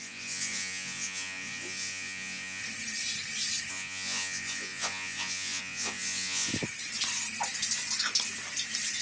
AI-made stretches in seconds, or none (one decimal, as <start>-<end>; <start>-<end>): 0.0-2.6; 3.7-6.5